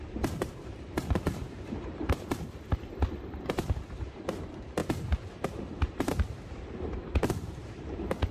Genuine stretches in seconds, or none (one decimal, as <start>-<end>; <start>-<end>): none